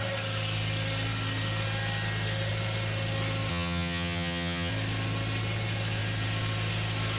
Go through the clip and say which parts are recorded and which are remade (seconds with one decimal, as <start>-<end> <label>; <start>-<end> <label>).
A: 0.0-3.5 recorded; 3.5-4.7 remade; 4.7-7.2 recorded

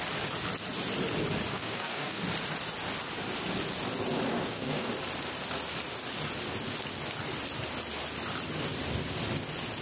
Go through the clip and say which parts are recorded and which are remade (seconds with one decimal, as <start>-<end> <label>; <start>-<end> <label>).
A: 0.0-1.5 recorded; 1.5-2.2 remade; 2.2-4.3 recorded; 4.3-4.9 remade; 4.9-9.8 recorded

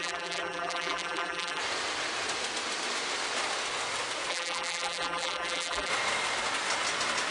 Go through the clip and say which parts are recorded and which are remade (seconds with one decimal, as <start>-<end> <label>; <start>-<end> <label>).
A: 0.0-1.6 remade; 1.6-4.3 recorded; 4.3-5.9 remade; 5.9-7.3 recorded

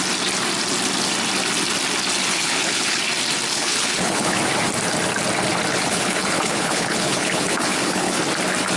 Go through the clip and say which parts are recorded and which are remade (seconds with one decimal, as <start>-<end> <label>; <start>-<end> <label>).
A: 0.0-2.2 recorded; 2.2-3.0 remade; 3.0-3.5 recorded; 3.5-4.4 remade; 4.4-5.7 recorded; 5.7-8.2 remade; 8.2-8.8 recorded

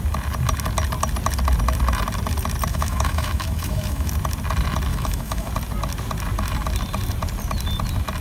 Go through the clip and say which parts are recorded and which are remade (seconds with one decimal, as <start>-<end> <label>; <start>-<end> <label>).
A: 0.0-2.7 recorded; 2.7-4.1 remade; 4.1-4.9 recorded; 4.9-5.5 remade; 5.5-8.2 recorded

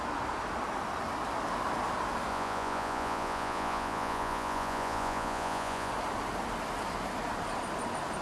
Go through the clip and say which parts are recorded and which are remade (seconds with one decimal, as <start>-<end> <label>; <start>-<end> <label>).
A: 0.0-2.3 recorded; 2.3-5.9 remade; 5.9-8.2 recorded